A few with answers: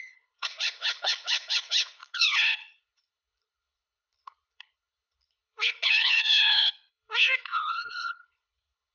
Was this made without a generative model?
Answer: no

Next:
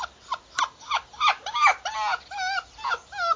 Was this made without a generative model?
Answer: yes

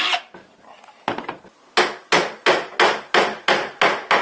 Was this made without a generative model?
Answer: yes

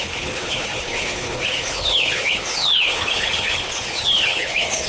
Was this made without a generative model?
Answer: no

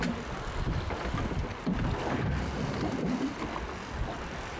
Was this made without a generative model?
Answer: yes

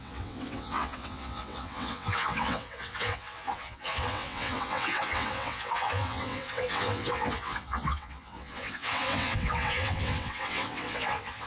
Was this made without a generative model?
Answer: no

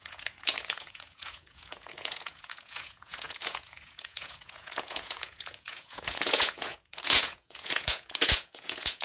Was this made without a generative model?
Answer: no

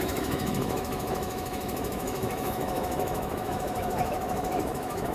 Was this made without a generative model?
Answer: no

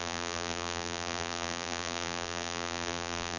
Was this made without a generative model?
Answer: no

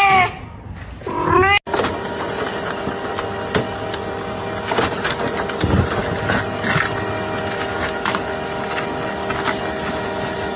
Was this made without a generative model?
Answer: yes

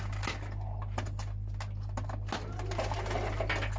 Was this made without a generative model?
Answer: yes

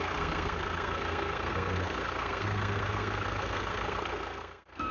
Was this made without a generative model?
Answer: no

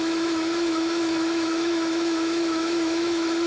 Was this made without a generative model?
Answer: no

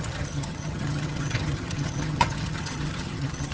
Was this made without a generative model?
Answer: no